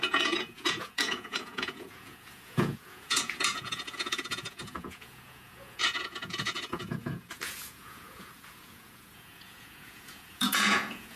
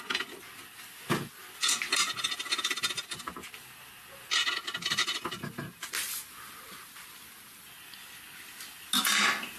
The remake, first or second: first